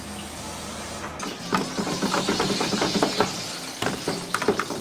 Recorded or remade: recorded